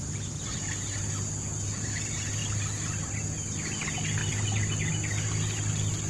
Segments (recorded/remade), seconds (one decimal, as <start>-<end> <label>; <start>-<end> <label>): 0.0-2.4 recorded; 2.4-3.0 remade; 3.0-4.2 recorded; 4.2-4.9 remade; 4.9-6.1 recorded